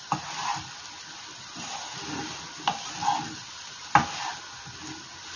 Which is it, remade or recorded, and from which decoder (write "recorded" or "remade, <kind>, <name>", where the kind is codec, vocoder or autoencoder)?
recorded